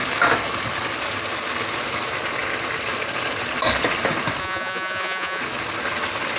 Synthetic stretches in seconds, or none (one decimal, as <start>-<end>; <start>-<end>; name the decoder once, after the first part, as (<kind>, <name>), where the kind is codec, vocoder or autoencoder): 4.4-5.4 (vocoder, Vocos)